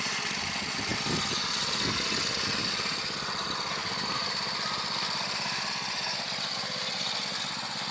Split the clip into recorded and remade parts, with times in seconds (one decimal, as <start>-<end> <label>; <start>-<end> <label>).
0.0-3.8 recorded; 3.8-5.7 remade; 5.7-7.9 recorded